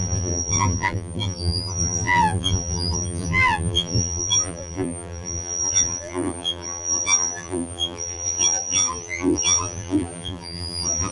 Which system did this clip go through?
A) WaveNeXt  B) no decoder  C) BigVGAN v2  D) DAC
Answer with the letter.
C